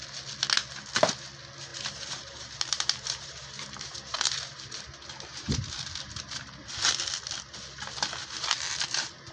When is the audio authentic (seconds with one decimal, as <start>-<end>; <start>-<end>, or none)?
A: 0.0-1.7; 6.9-8.2